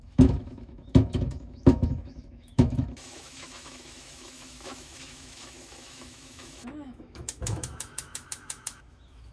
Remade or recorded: remade